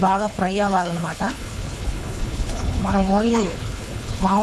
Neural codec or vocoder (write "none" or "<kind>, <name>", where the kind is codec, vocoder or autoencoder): codec, HILCodec